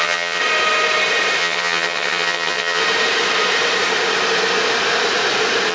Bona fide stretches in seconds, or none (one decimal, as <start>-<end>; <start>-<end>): 0.4-1.4; 2.8-5.7

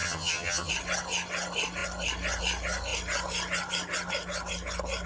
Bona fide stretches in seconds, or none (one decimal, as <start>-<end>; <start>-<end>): 0.7-5.1